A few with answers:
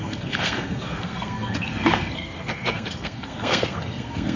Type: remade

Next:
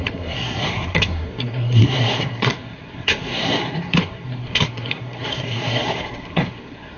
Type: remade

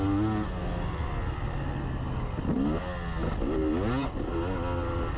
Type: recorded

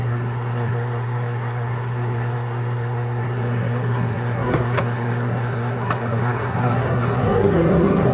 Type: remade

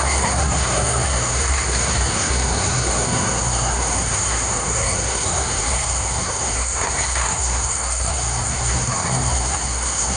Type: remade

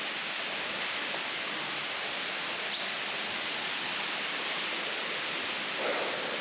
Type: recorded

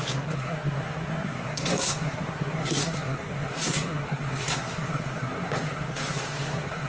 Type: remade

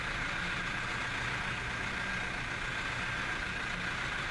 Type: recorded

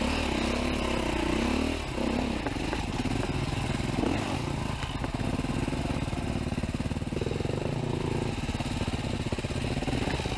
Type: recorded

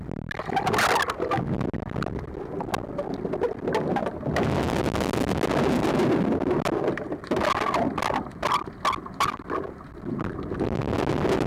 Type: recorded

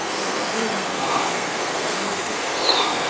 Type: remade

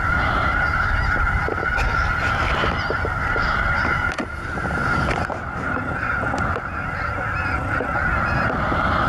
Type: recorded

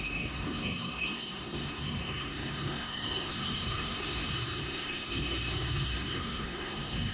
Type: remade